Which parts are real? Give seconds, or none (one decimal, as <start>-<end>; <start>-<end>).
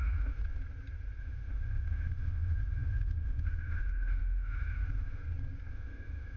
0.4-1.2; 5.2-5.7